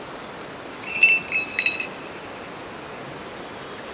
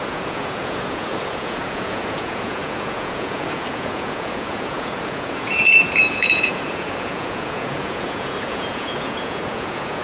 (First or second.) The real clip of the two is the first